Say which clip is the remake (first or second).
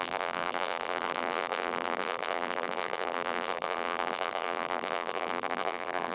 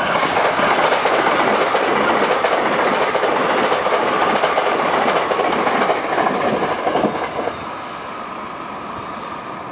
first